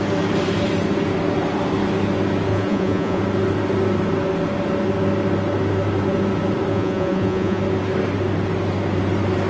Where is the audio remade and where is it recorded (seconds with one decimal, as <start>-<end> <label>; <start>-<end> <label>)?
0.0-2.5 recorded; 2.5-3.2 remade; 3.2-6.7 recorded; 6.7-7.6 remade; 7.6-9.5 recorded